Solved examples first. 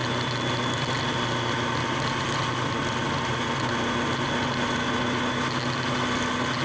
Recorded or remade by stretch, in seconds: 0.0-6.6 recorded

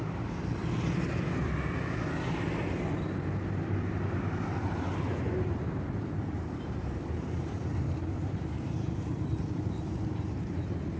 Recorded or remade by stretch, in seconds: 0.0-0.6 remade; 0.6-3.8 recorded; 3.8-11.0 remade

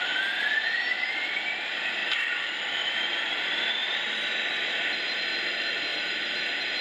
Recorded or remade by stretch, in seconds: 0.0-2.0 recorded; 2.0-3.3 remade; 3.3-3.8 recorded; 3.8-4.5 remade; 4.5-5.9 recorded; 5.9-6.8 remade

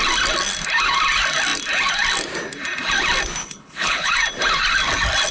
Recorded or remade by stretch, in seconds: 0.0-3.4 recorded; 3.4-4.1 remade; 4.1-5.3 recorded

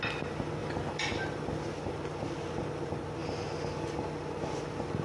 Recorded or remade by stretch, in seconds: 0.0-5.0 recorded

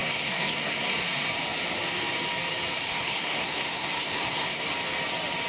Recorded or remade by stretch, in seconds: 0.0-0.9 remade; 0.9-3.0 recorded; 3.0-4.6 remade; 4.6-5.5 recorded